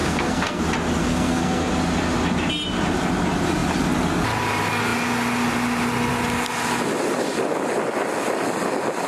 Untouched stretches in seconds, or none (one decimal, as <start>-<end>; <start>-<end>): 0.6-1.0; 1.7-9.1